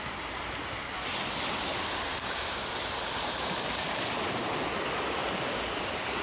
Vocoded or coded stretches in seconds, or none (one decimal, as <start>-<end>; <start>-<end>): 1.7-4.0